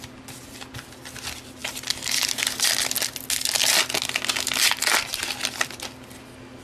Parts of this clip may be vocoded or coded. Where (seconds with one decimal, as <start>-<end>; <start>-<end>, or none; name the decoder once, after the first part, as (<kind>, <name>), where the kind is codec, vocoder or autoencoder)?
none